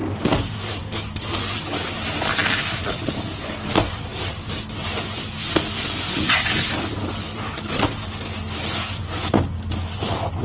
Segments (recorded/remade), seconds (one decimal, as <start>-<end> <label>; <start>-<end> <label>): 0.0-1.2 remade; 1.2-4.1 recorded; 4.1-4.7 remade; 4.7-10.4 recorded